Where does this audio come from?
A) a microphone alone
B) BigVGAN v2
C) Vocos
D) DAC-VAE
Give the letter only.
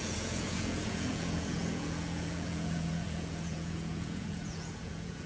C